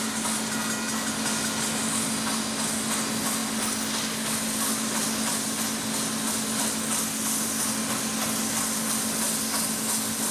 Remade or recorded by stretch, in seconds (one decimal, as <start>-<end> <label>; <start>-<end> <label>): 0.0-10.3 recorded